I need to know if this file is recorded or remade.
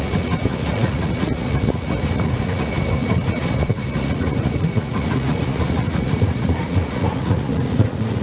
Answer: remade